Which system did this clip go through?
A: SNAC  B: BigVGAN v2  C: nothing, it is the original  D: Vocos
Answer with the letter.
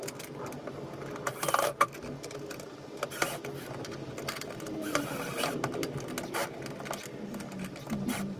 C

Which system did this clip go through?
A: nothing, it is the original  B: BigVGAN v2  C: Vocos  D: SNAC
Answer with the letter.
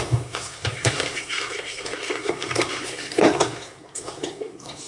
D